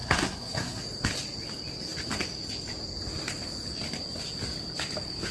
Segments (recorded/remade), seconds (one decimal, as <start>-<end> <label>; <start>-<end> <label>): 0.0-0.8 remade; 0.8-5.3 recorded

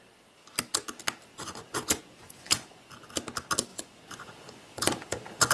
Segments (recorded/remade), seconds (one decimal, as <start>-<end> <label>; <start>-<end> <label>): 0.0-1.3 recorded; 1.3-2.9 remade; 2.9-3.7 recorded; 3.7-5.5 remade